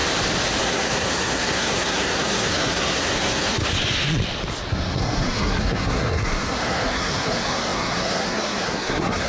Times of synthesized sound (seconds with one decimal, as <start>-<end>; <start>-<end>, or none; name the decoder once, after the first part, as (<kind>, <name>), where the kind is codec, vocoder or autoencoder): 0.6-3.6 (codec, SNAC); 4.7-9.3